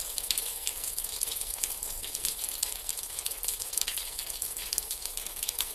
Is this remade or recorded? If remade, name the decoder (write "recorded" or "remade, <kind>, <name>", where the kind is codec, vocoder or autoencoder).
remade, codec, SNAC